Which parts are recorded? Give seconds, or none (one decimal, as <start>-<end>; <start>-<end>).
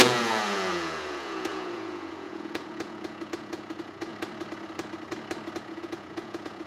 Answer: 4.1-5.6